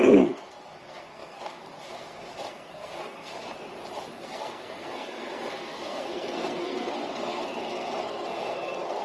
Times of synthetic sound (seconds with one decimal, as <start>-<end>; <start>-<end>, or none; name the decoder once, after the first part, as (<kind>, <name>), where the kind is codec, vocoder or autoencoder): 0.0-3.3 (codec, SNAC); 4.1-9.0